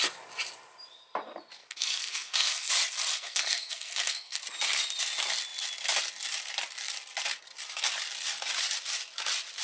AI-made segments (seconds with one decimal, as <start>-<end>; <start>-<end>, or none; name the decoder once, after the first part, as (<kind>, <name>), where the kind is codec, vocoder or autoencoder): 1.6-2.7 (codec, SNAC); 3.1-4.4